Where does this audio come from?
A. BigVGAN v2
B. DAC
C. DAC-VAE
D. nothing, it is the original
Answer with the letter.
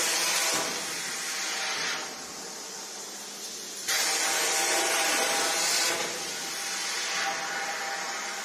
D